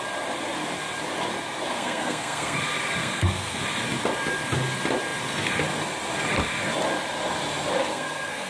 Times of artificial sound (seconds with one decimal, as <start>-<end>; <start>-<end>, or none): 1.7-2.6; 3.0-3.6; 7.9-8.5